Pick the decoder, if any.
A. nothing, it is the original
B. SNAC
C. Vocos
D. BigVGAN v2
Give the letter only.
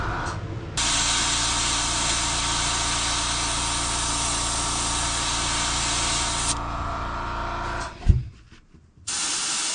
A